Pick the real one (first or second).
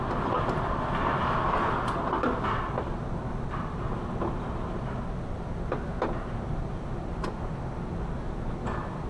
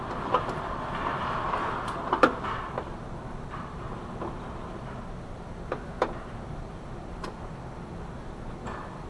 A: first